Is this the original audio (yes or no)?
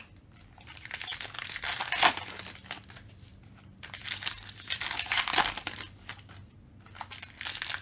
yes